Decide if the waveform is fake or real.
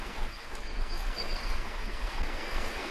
fake